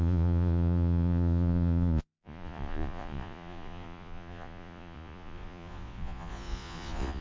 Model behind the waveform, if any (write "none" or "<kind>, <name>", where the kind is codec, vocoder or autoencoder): vocoder, Vocos